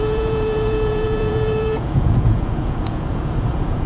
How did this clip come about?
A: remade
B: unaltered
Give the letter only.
A